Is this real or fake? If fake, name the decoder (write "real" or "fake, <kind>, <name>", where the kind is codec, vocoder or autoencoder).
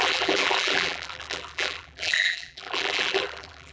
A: fake, vocoder, BigVGAN v2